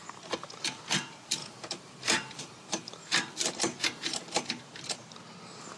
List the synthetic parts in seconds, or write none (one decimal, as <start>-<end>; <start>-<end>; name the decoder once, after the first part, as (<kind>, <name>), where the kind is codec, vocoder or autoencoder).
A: 0.0-5.0 (vocoder, BigVGAN v2)